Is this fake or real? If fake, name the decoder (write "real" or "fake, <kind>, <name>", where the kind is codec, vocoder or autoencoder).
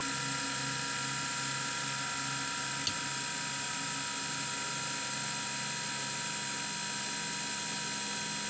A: real